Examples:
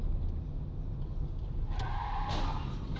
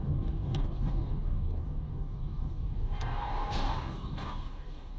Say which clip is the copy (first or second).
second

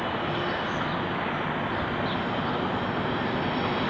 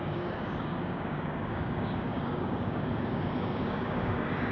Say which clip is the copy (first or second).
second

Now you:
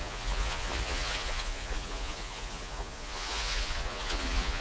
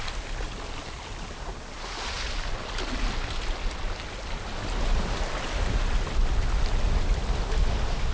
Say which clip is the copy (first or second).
first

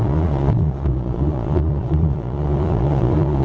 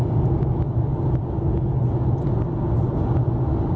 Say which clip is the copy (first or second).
first